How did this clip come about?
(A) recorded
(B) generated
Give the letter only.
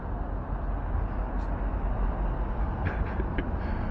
A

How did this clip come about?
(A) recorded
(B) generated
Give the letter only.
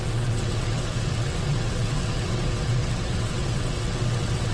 B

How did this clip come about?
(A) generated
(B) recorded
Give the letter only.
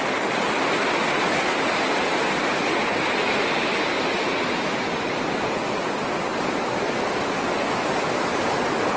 B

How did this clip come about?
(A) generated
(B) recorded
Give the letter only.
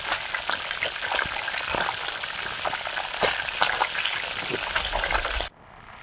B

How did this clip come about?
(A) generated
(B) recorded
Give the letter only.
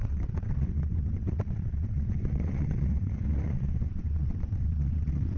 A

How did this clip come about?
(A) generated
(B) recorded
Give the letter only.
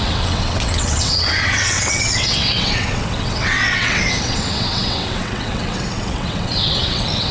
A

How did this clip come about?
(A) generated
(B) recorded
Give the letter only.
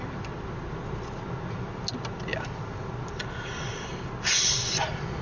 B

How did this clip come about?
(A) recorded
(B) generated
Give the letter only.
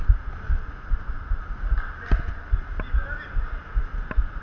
A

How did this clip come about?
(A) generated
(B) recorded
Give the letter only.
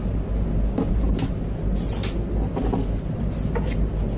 B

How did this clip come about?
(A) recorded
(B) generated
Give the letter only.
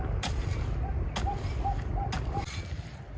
A